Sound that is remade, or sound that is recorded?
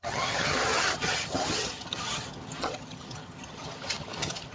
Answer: remade